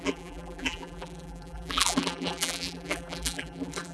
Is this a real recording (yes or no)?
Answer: no